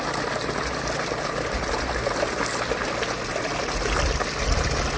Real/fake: real